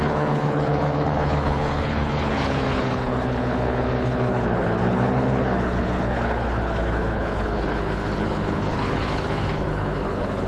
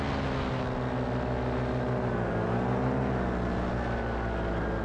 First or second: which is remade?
first